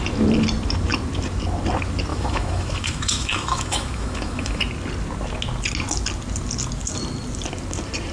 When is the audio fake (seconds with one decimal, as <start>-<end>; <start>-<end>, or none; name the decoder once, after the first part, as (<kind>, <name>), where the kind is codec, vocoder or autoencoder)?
2.1-4.6 (autoencoder, DAC-VAE)